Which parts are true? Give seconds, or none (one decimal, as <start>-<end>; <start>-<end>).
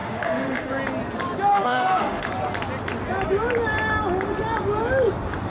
0.7-1.5; 2.3-5.5